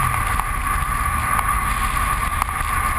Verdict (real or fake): real